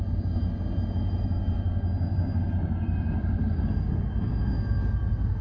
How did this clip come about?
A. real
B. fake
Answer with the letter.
A